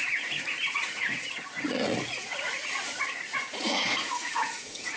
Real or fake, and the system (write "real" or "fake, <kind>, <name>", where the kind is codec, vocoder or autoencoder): fake, vocoder, Vocos